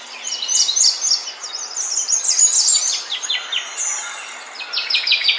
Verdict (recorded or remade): recorded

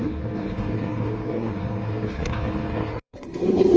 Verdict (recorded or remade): remade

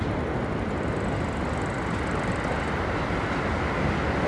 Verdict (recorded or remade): recorded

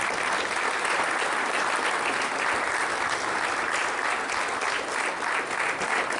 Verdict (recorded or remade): recorded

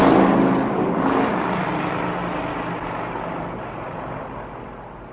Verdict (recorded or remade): recorded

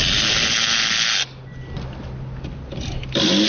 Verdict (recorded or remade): recorded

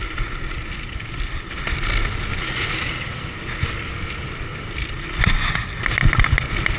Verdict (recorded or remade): recorded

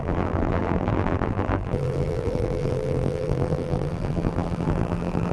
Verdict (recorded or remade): remade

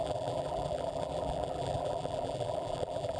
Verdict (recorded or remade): remade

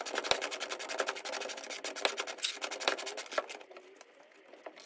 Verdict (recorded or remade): recorded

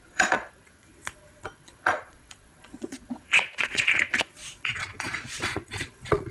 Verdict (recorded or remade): remade